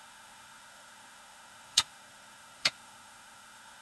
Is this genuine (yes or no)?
no